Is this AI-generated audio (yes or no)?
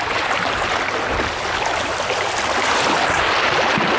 no